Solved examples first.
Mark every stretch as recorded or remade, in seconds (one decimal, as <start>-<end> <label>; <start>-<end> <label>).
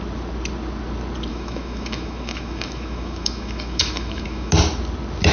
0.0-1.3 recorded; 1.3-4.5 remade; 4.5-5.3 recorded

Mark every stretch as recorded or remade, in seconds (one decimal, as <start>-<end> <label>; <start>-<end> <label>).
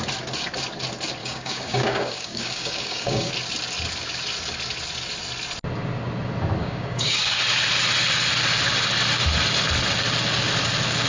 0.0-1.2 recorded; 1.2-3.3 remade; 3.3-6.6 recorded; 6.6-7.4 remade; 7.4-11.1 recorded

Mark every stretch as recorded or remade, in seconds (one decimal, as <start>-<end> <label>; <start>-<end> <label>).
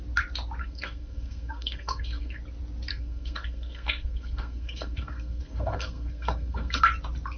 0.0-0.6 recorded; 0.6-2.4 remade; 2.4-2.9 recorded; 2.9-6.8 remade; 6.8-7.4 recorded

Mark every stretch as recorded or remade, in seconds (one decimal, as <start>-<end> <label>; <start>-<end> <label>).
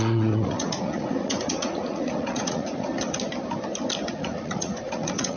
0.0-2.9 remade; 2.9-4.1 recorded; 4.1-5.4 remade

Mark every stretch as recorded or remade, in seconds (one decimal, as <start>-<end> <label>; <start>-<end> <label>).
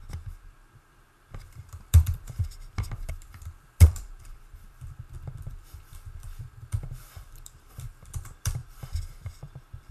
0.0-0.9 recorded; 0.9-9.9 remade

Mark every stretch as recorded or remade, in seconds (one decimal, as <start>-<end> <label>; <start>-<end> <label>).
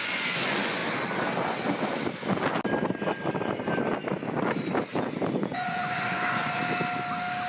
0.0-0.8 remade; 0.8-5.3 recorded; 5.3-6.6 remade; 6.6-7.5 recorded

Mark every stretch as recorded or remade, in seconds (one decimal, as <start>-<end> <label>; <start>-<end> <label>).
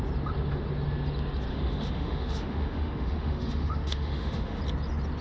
0.0-1.5 recorded; 1.5-4.6 remade; 4.6-5.2 recorded